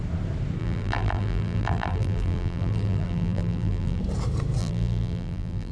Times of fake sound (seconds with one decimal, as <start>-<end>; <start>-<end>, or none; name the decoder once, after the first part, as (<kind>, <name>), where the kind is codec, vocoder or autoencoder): 0.6-4.0 (vocoder, BigVGAN v2); 4.6-5.7